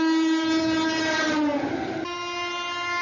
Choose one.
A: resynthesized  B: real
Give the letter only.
B